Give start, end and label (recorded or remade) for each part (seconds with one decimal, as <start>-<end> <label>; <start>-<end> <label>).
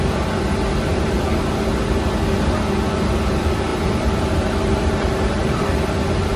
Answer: 0.0-0.9 recorded; 0.9-1.4 remade; 1.4-3.7 recorded; 3.7-5.9 remade; 5.9-6.4 recorded